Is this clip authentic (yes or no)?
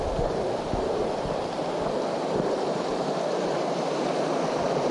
yes